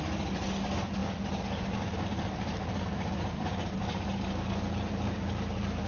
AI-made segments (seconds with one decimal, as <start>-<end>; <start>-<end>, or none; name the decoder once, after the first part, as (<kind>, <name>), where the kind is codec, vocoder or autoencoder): none

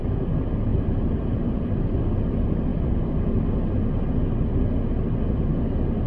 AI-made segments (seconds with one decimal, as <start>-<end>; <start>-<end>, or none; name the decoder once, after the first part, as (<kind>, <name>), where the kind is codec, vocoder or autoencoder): 0.7-1.9 (vocoder, BigVGAN v2); 2.7-3.5

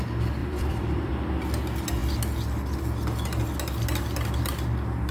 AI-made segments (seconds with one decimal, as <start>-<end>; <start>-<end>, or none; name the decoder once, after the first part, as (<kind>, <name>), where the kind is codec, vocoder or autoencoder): 0.4-1.1 (vocoder, BigVGAN v2)

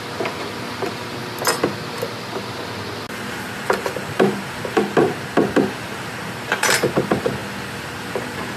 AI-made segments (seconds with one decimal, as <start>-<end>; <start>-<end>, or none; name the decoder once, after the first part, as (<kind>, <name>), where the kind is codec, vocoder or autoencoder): 0.0-1.2 (vocoder, BigVGAN v2); 3.3-4.8; 5.7-7.4; 8.1-8.6